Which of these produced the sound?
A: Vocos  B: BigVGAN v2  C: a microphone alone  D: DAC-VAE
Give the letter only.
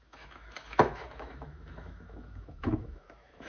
D